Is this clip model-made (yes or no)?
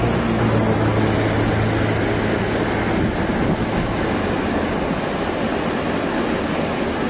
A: no